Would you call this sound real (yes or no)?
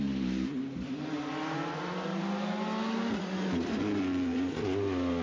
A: yes